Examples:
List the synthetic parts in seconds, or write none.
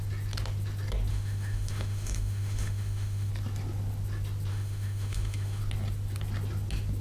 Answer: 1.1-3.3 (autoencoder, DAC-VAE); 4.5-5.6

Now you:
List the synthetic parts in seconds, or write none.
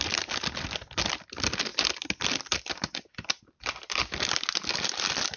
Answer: none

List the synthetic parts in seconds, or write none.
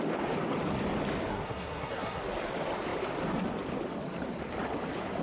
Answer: 1.3-2.2 (codec, SNAC)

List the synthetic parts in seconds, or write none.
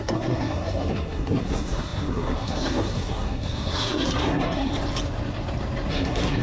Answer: 0.0-4.7 (codec, SNAC); 5.9-6.4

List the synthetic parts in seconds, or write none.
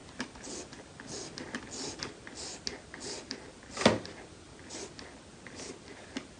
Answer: none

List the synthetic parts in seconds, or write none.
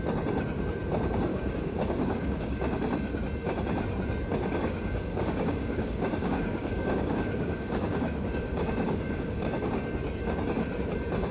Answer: 1.3-2.6 (codec, DAC); 4.6-9.7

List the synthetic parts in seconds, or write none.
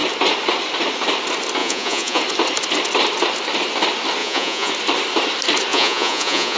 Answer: 1.6-2.2 (vocoder, Vocos); 4.2-4.7; 5.7-6.6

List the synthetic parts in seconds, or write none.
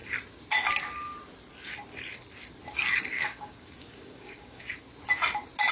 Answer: 3.1-4.7 (codec, DAC)